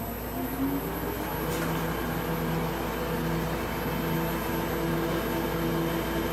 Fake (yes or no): no